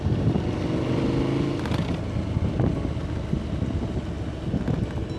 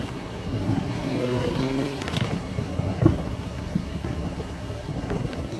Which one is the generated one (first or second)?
second